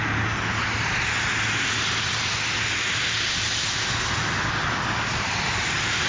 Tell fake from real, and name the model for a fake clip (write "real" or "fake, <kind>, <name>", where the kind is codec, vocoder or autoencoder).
real